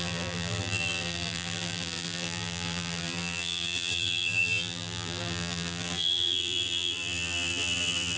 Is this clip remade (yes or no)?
yes